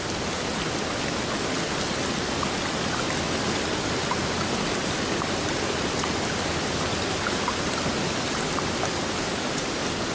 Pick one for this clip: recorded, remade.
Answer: recorded